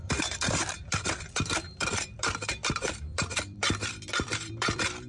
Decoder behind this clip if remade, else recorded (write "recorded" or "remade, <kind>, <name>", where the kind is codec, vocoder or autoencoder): remade, vocoder, BigVGAN v2